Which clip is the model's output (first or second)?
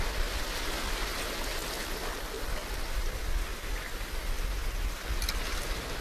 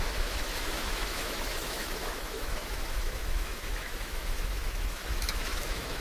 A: second